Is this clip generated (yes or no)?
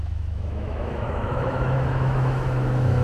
yes